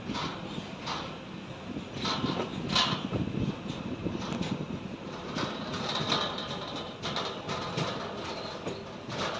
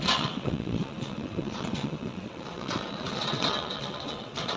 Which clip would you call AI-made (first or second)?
second